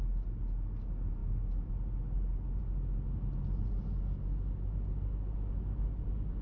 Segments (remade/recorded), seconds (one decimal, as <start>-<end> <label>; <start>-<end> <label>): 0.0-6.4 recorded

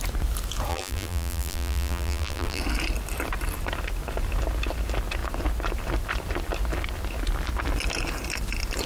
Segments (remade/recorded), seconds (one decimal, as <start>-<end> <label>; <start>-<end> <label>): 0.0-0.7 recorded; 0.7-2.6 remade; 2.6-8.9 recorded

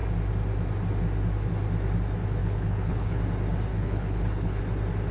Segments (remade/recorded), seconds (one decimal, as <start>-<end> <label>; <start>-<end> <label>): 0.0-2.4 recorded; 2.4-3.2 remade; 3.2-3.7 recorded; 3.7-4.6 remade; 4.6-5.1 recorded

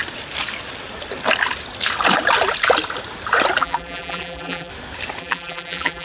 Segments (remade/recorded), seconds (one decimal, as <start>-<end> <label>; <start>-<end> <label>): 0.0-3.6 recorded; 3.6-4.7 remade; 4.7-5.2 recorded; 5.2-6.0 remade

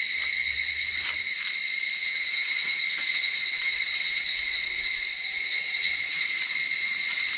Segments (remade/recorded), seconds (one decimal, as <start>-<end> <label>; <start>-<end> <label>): 0.0-2.0 recorded; 2.0-6.4 remade; 6.4-7.4 recorded

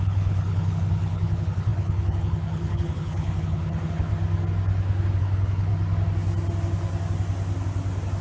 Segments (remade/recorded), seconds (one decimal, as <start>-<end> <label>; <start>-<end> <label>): 0.0-4.1 remade; 4.1-5.2 recorded; 5.2-5.7 remade; 5.7-8.2 recorded

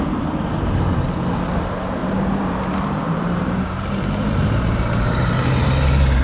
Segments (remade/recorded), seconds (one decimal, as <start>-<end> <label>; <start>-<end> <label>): 0.0-2.0 recorded; 2.0-2.6 remade; 2.6-3.1 recorded; 3.1-6.2 remade

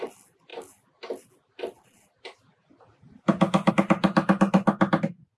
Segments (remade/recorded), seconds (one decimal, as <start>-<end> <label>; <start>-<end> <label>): 0.0-5.4 recorded